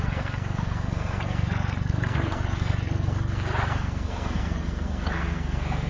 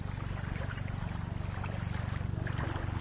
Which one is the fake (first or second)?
first